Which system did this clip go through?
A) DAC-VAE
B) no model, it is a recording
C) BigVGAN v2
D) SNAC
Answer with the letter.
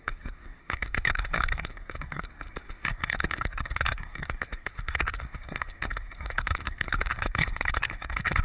D